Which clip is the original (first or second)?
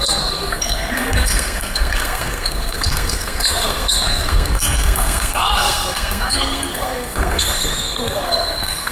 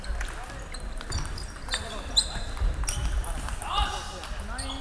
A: second